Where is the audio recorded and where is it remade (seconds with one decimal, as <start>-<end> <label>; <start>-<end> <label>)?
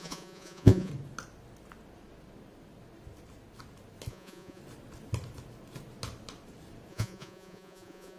0.0-0.9 remade; 0.9-4.1 recorded; 4.1-4.6 remade; 4.6-6.9 recorded; 6.9-8.2 remade